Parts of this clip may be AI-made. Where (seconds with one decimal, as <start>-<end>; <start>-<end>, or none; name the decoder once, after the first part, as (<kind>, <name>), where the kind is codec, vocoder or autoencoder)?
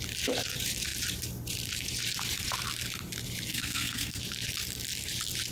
3.5-4.2 (codec, SNAC)